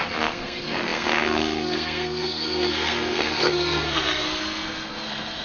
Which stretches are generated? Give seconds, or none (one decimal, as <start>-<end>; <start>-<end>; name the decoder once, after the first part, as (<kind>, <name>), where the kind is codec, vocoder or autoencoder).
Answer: 0.0-5.4 (codec, SNAC)